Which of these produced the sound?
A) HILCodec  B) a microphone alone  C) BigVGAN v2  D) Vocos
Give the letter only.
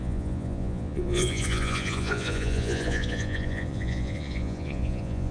D